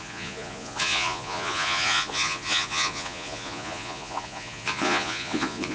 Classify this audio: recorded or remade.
remade